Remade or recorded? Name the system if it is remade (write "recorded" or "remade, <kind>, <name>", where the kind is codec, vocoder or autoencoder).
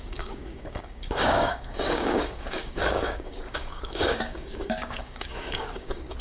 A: remade, codec, DAC